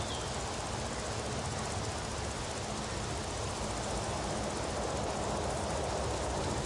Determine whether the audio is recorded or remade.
recorded